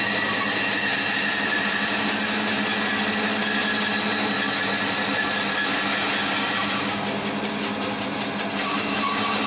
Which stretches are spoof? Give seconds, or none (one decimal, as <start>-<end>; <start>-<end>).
none